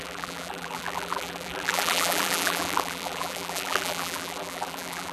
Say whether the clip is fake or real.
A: fake